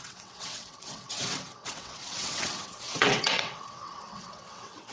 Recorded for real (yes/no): no